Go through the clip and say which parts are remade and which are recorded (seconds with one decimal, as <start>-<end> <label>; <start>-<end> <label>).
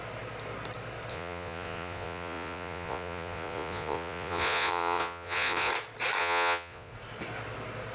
0.0-1.1 recorded; 1.1-5.7 remade; 5.7-6.2 recorded; 6.2-6.9 remade; 6.9-7.9 recorded